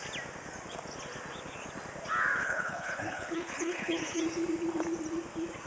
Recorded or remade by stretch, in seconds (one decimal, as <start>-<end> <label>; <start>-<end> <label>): 0.0-2.4 recorded; 2.4-4.2 remade; 4.2-5.7 recorded